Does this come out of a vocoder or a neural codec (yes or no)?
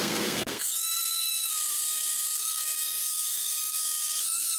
yes